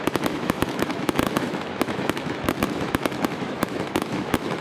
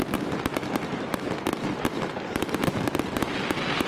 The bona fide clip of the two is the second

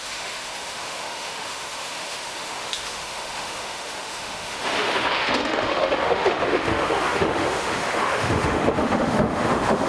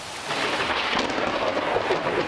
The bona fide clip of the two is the second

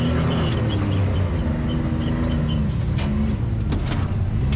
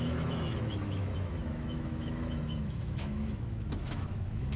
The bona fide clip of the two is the first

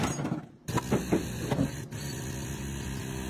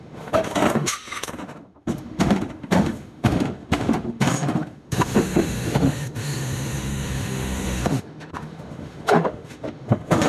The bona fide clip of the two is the first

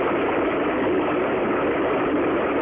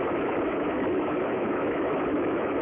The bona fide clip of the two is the first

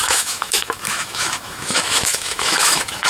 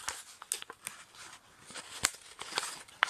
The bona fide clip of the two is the second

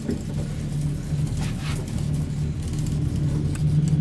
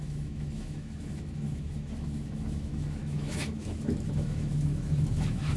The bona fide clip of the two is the first